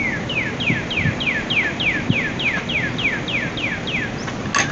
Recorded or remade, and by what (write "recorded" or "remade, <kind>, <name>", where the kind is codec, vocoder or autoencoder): recorded